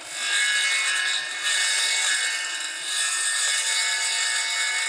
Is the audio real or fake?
real